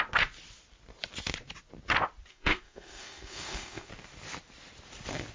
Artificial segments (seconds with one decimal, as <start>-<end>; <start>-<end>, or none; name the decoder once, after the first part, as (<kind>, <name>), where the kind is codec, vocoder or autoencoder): 2.3-3.9 (codec, SNAC)